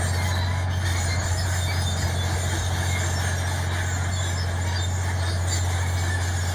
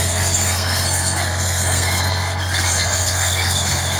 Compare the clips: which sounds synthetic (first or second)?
second